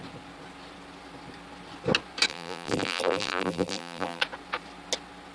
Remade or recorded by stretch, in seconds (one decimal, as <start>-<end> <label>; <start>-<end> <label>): 0.0-2.3 recorded; 2.3-4.2 remade; 4.2-5.3 recorded